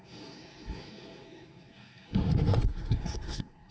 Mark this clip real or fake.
fake